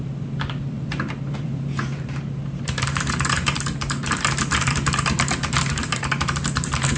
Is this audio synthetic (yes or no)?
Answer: yes